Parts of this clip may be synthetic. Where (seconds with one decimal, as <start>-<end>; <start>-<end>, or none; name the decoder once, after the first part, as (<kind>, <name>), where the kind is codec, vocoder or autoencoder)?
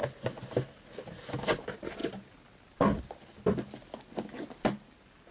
none